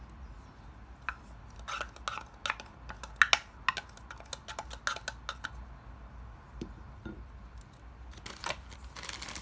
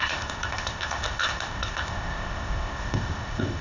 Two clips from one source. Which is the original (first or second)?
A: first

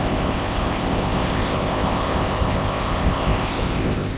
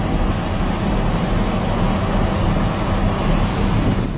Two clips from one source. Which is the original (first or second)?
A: second